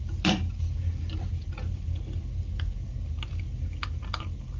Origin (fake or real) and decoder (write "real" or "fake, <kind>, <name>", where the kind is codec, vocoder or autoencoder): real